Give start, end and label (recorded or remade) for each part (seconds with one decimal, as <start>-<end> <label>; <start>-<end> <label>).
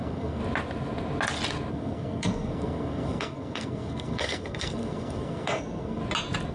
0.0-0.4 remade; 0.4-1.7 recorded; 1.7-6.0 remade; 6.0-6.5 recorded